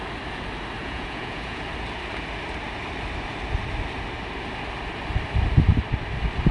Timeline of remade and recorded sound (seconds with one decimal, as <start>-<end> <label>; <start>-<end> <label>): 0.0-0.8 recorded; 0.8-1.6 remade; 1.6-6.5 recorded